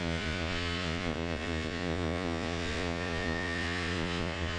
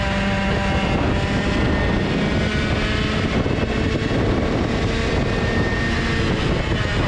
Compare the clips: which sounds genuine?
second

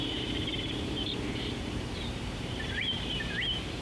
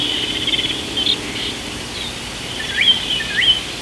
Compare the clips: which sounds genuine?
second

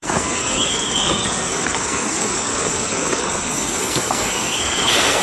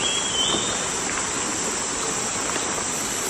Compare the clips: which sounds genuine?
second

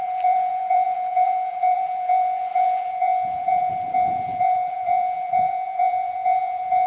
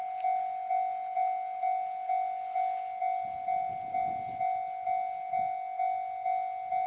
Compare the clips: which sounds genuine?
second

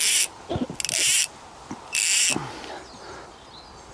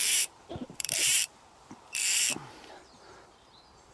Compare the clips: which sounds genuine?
first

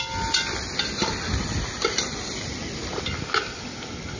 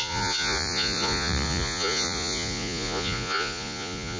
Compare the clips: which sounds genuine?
first